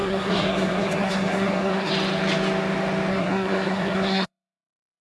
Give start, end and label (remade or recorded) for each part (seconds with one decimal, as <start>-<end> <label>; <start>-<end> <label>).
0.0-1.9 remade; 1.9-3.1 recorded; 3.1-5.0 remade